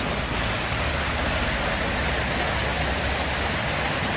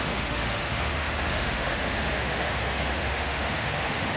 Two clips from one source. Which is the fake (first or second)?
second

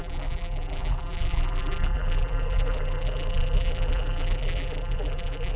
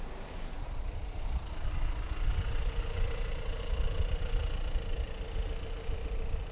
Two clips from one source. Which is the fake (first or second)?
first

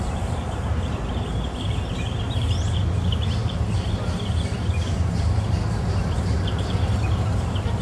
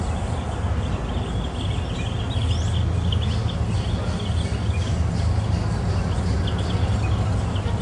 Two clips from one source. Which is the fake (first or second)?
first